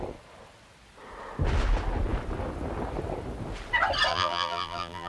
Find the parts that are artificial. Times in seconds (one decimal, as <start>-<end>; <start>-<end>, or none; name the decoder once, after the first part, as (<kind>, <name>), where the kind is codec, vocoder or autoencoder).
4.1-5.1 (vocoder, BigVGAN v2)

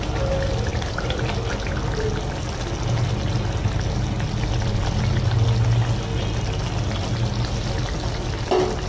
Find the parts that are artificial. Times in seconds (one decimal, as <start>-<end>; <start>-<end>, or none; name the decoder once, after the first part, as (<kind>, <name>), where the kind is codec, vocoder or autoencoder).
0.7-1.2 (vocoder, BigVGAN v2)

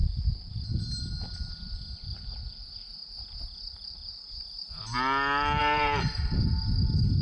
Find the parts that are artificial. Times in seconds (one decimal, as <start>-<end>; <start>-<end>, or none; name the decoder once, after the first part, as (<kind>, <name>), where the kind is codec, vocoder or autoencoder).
5.6-6.1 (vocoder, BigVGAN v2)

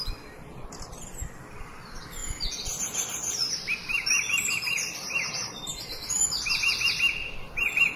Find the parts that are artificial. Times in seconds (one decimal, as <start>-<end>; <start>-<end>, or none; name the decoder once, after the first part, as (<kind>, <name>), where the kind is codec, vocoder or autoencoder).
0.0-5.7 (vocoder, BigVGAN v2); 7.6-8.0